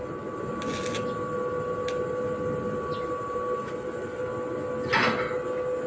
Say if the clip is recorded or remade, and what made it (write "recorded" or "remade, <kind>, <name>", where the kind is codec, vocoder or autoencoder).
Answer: recorded